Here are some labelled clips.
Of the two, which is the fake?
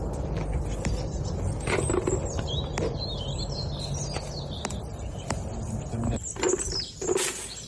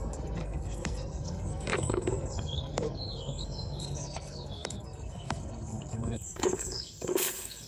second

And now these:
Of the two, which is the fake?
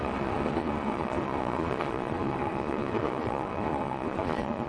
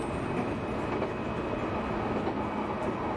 first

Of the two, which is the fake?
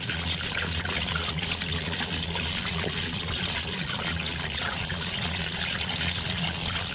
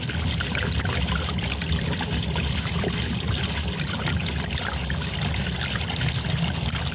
first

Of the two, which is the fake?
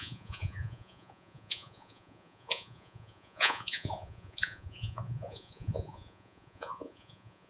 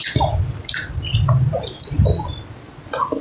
first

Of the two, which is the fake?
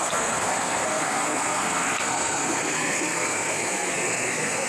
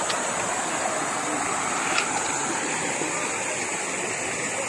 first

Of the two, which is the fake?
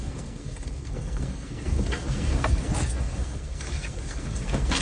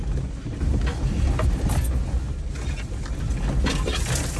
first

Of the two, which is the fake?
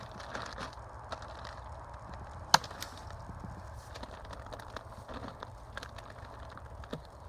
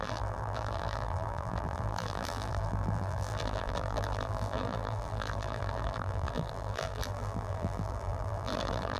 second